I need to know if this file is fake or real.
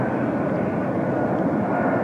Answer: real